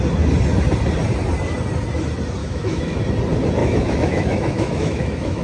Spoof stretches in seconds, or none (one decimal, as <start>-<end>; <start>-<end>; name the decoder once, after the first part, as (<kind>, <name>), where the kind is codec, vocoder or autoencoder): 2.4-3.0 (autoencoder, DAC-VAE); 3.6-5.4

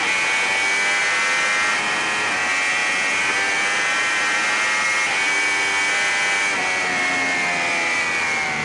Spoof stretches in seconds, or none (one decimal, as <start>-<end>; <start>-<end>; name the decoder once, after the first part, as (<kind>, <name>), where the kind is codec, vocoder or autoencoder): none

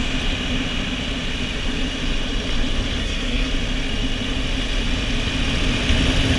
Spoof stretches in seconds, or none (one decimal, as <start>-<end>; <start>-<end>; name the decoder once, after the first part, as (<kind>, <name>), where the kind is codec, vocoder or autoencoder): 3.0-3.5 (codec, SNAC)

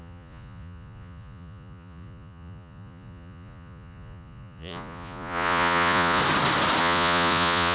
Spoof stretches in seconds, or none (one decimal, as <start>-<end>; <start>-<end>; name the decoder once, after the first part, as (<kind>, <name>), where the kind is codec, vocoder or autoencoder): 0.0-6.2 (vocoder, Vocos); 6.8-7.7

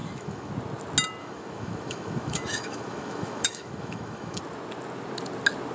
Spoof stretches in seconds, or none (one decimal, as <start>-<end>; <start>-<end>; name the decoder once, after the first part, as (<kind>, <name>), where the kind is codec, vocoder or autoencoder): 0.0-0.5 (autoencoder, DAC-VAE); 1.2-4.4